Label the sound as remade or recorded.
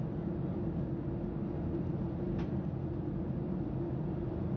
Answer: recorded